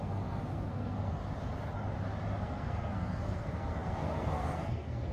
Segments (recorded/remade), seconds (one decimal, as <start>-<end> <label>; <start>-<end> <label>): 0.0-1.2 remade; 1.2-2.4 recorded; 2.4-5.1 remade